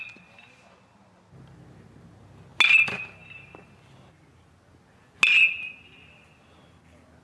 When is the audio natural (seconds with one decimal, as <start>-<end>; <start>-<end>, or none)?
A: 0.0-7.2